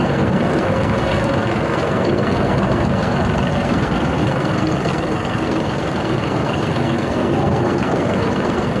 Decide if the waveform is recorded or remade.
remade